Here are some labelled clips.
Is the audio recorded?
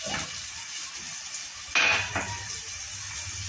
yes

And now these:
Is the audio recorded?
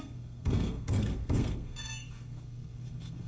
no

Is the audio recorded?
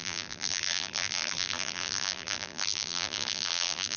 no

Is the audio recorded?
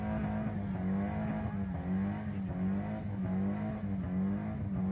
yes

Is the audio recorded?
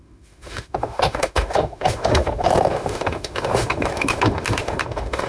no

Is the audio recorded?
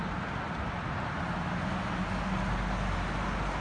yes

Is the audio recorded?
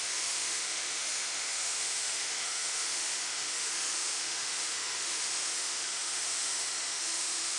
no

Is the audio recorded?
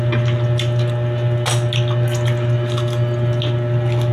yes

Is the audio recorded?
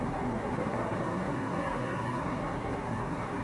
no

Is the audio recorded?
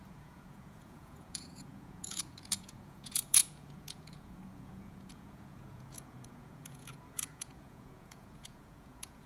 no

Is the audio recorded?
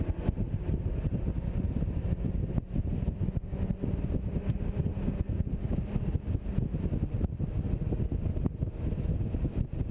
yes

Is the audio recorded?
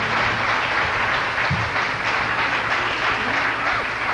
yes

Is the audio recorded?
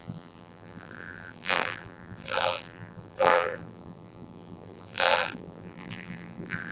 no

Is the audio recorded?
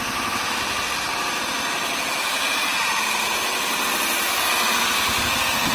yes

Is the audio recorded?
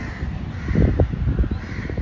no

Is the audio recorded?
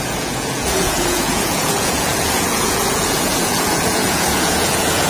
no